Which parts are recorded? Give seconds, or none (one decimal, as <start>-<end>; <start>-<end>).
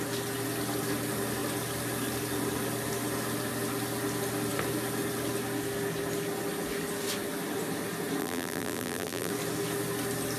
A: 0.0-8.2; 9.3-10.4